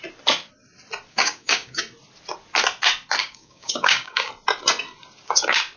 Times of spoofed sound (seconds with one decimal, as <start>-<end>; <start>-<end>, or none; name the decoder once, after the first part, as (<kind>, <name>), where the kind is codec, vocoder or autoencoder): 1.1-1.8 (codec, DAC); 3.2-4.3